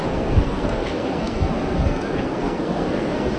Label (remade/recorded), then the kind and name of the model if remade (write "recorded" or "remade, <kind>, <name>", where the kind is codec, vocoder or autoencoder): remade, codec, SNAC